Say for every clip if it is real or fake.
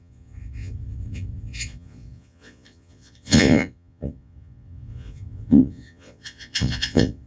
fake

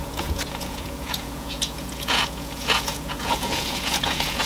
fake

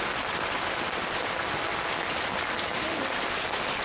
real